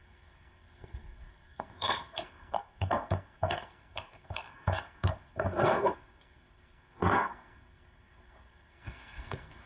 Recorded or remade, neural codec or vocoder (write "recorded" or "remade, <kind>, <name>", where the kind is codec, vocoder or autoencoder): remade, codec, SNAC